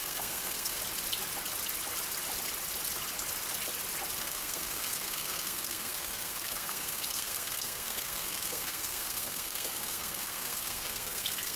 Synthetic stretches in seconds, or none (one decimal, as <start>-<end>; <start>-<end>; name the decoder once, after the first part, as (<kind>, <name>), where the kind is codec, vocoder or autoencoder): 0.0-0.8 (codec, SNAC); 4.2-11.6